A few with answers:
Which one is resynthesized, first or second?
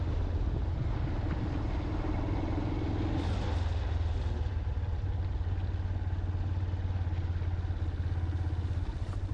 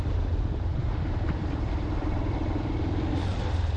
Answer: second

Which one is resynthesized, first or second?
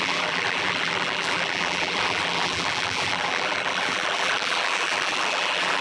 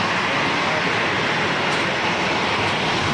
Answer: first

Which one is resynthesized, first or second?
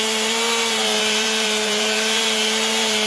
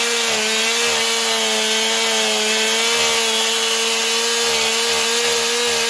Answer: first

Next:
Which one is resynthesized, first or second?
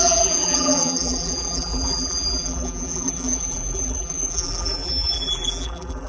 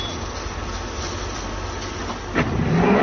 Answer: first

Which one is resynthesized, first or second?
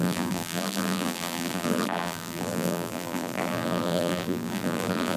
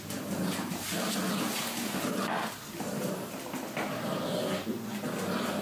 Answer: first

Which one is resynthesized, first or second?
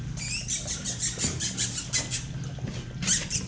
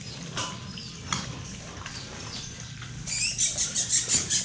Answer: second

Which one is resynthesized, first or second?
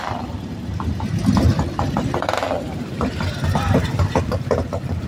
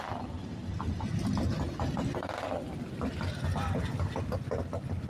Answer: first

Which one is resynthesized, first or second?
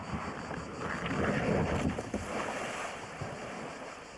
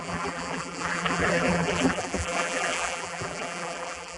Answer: second